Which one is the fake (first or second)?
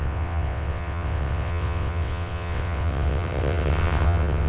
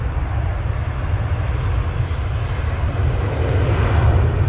first